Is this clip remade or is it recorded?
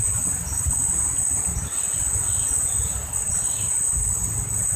recorded